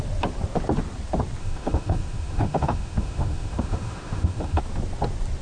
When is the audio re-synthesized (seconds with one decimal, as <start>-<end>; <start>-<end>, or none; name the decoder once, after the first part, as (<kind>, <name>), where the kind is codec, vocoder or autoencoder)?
1.4-4.6 (autoencoder, DAC-VAE)